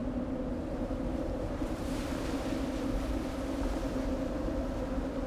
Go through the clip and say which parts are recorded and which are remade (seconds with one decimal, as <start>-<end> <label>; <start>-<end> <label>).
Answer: 0.0-0.7 recorded; 0.7-2.1 remade; 2.1-5.3 recorded